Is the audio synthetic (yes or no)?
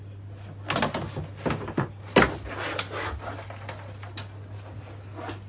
no